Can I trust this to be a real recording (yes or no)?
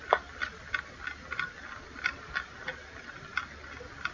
yes